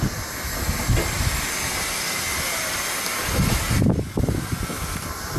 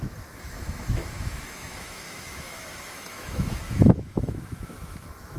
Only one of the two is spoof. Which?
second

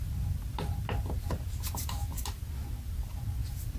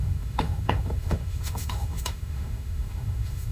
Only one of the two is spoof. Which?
second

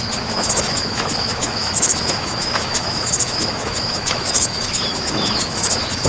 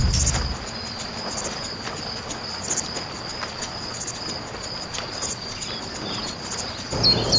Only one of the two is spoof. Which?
first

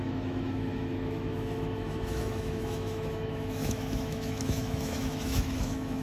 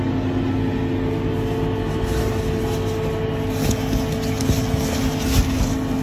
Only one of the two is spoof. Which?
first